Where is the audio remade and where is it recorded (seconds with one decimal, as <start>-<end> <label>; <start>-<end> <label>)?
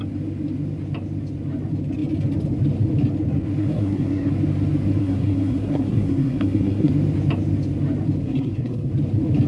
0.0-3.6 recorded; 3.6-4.3 remade; 4.3-5.0 recorded; 5.0-6.9 remade; 6.9-8.2 recorded; 8.2-8.9 remade; 8.9-9.5 recorded